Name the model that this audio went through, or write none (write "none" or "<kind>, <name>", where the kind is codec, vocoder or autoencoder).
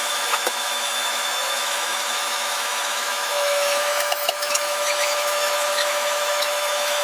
autoencoder, DAC-VAE